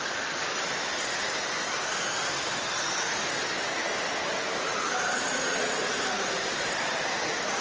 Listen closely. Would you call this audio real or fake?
real